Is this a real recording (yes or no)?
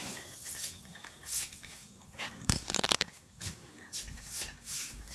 no